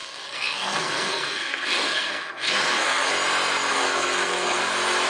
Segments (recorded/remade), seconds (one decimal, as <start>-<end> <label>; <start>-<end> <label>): 0.0-3.1 remade; 3.1-3.7 recorded; 3.7-4.6 remade; 4.6-5.1 recorded